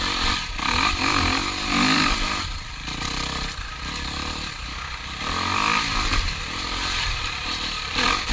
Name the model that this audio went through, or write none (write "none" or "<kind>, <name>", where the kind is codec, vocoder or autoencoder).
vocoder, BigVGAN v2